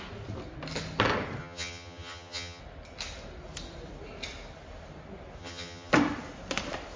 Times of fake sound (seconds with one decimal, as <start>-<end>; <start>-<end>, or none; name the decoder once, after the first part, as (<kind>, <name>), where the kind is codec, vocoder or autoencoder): 1.4-2.6 (vocoder, HiFi-GAN); 5.4-5.9